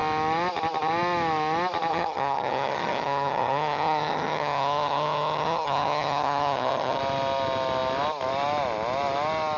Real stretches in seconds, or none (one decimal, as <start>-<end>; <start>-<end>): 0.0-1.9; 7.0-9.6